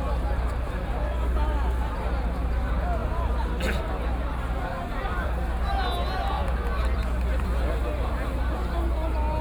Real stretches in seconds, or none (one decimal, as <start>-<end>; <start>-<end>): 0.0-5.0; 5.7-6.4; 7.7-9.4